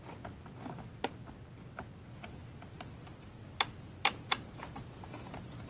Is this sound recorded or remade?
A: recorded